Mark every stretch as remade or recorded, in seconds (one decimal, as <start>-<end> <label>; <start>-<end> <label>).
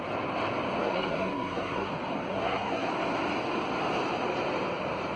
0.0-0.8 recorded; 0.8-1.9 remade; 1.9-2.3 recorded; 2.3-2.9 remade; 2.9-5.2 recorded